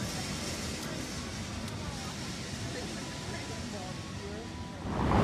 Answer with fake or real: real